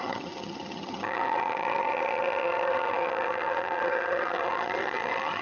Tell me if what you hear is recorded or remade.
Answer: remade